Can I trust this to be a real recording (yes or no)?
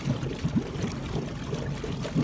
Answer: yes